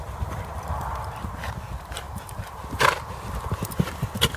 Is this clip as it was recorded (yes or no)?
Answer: no